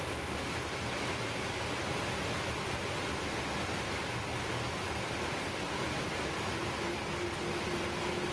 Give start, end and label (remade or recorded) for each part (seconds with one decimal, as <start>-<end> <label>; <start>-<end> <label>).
0.0-8.3 recorded